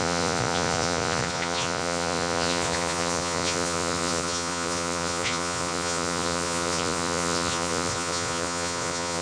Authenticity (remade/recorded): remade